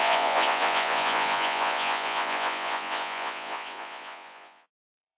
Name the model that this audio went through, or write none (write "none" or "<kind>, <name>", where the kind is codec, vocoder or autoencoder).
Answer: vocoder, Vocos